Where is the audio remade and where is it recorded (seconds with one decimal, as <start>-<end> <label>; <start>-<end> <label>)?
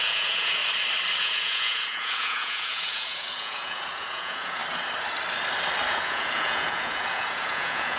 0.0-0.6 remade; 0.6-1.2 recorded; 1.2-4.6 remade; 4.6-5.9 recorded; 5.9-8.0 remade